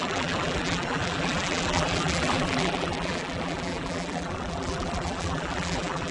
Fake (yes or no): yes